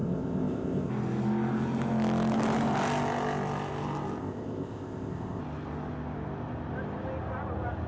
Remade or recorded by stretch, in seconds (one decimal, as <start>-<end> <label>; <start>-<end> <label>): 0.0-0.9 remade; 0.9-4.2 recorded; 4.2-5.4 remade; 5.4-7.9 recorded